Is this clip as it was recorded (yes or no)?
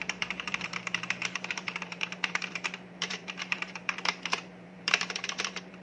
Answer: no